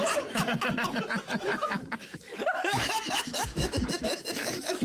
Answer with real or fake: fake